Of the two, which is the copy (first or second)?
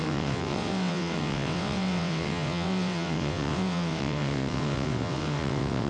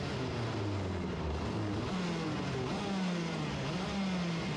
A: first